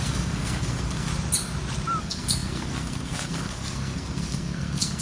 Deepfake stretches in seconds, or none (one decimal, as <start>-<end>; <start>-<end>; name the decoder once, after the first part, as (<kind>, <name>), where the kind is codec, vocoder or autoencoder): 0.0-1.1 (codec, SNAC); 2.0-5.0